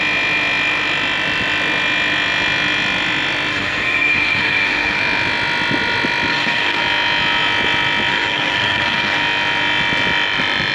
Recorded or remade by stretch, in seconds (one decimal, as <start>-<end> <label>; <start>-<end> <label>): 0.0-3.5 recorded; 3.5-5.0 remade; 5.0-6.3 recorded; 6.3-6.8 remade; 6.8-8.1 recorded; 8.1-9.2 remade; 9.2-10.7 recorded